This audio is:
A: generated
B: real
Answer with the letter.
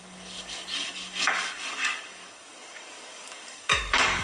A